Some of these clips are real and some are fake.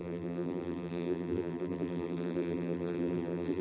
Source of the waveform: fake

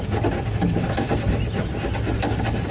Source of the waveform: real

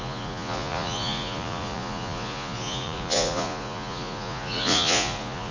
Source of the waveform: fake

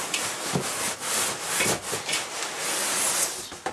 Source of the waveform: real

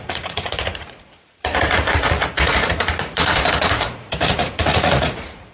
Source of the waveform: fake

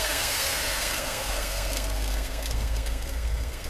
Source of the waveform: fake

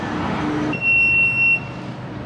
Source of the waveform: real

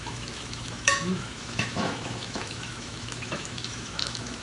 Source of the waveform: fake